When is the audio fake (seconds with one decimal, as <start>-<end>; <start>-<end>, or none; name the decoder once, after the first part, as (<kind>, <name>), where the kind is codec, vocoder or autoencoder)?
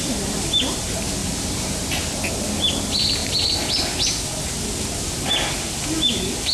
1.2-2.0 (vocoder, BigVGAN v2)